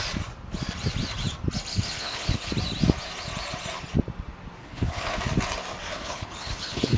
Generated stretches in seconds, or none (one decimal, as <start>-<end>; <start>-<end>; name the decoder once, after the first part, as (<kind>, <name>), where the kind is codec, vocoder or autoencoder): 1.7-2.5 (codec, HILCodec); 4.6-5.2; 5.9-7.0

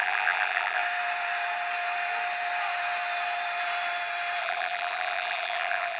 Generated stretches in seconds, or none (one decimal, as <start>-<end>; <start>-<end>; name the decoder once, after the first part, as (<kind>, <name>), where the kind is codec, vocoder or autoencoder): 0.0-0.8 (vocoder, BigVGAN v2); 4.4-6.0

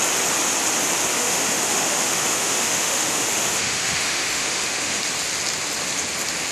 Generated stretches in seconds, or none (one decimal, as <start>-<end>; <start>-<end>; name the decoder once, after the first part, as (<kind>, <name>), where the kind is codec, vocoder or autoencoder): 1.1-5.0 (autoencoder, DAC-VAE)